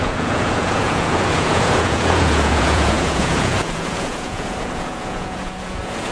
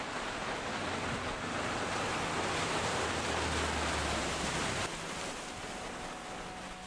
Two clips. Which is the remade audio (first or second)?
first